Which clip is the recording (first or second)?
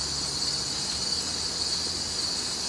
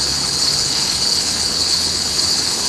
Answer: first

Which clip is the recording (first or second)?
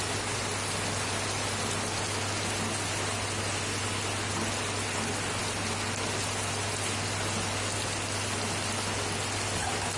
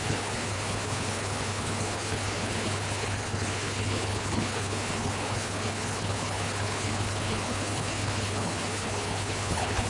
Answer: first